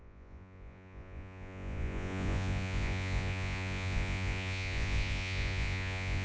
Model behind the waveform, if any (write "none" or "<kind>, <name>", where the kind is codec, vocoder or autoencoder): vocoder, Vocos